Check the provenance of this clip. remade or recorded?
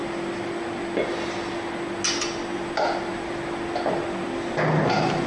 recorded